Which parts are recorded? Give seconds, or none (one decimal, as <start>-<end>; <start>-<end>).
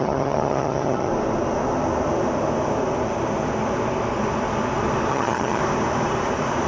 1.1-5.1; 5.6-6.7